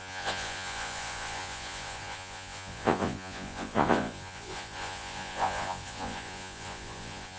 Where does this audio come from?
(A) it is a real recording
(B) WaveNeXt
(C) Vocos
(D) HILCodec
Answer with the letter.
C